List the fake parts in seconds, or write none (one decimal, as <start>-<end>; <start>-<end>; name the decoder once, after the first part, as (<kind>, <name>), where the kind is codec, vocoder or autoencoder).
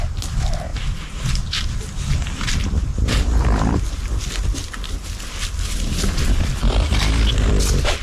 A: 0.7-3.9 (vocoder, BigVGAN v2)